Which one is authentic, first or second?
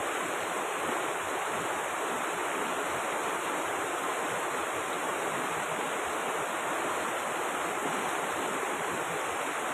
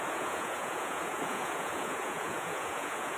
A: first